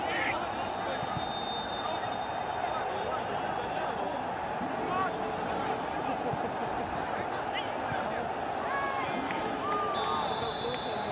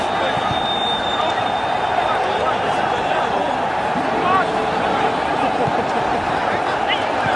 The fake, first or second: second